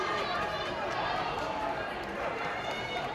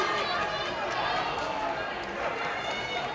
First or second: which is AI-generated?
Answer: first